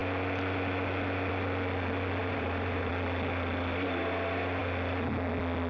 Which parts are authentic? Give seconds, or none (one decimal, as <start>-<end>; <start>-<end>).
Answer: 0.0-2.2; 2.9-5.7